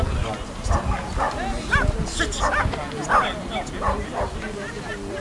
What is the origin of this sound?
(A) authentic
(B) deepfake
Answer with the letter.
A